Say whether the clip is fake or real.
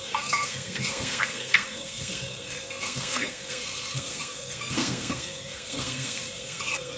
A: fake